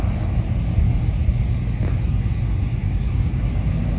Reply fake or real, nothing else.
real